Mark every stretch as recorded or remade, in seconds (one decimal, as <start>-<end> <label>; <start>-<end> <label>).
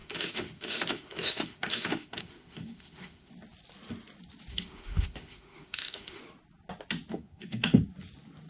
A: 0.0-3.3 remade; 3.3-4.5 recorded; 4.5-6.2 remade; 6.2-7.1 recorded; 7.1-7.8 remade; 7.8-8.5 recorded